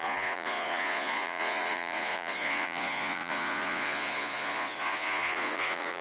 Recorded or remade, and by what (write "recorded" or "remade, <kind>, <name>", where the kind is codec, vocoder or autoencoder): remade, vocoder, Vocos